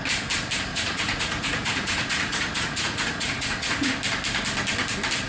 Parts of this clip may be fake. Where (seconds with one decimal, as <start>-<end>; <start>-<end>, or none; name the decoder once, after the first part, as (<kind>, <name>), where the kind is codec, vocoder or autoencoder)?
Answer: 0.7-3.9 (vocoder, Vocos)